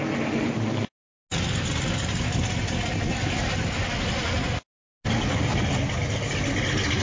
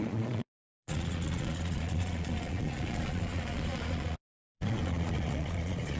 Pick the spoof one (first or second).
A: second